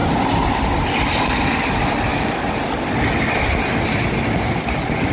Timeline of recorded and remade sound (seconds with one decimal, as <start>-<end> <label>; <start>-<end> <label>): 0.0-5.1 recorded